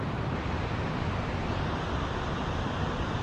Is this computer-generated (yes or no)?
no